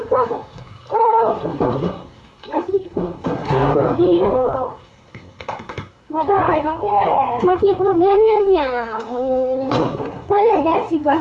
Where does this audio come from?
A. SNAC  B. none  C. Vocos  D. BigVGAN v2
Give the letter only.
A